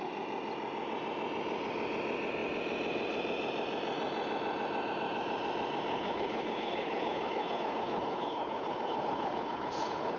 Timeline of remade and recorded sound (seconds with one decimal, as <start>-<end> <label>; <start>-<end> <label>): 0.0-5.9 recorded; 5.9-10.2 remade